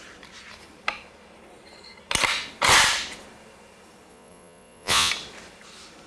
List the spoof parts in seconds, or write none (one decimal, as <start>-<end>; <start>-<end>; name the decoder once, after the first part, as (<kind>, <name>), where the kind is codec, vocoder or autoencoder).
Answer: 4.1-5.1 (vocoder, Vocos)